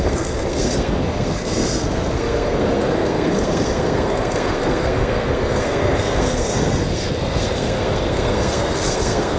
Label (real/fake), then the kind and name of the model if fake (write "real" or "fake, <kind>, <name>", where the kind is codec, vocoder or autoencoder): fake, codec, SNAC